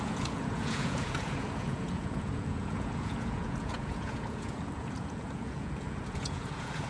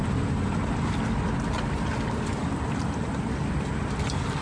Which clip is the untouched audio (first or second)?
second